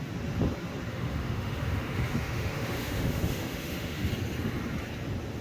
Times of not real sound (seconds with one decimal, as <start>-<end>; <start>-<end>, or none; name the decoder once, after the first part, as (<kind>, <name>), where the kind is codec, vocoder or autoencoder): 0.9-4.1 (autoencoder, DAC-VAE)